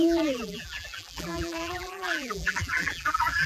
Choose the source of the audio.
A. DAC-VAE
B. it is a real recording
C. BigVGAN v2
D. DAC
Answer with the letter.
C